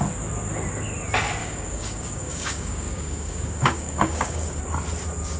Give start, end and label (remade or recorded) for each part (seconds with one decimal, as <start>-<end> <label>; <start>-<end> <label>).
0.0-1.4 recorded; 1.4-4.6 remade; 4.6-5.4 recorded